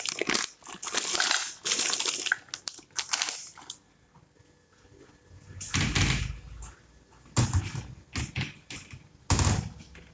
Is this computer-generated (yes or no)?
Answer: no